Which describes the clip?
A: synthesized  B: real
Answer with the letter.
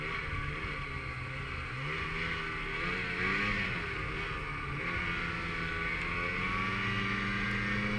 B